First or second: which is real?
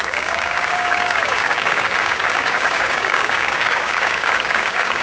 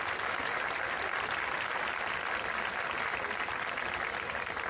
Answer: second